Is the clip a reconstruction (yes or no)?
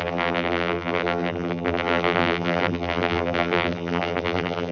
yes